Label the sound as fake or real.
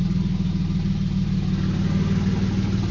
real